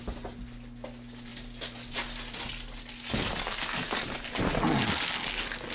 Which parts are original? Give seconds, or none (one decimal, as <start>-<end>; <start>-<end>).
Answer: 0.0-5.7